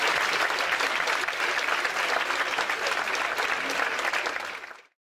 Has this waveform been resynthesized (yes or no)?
no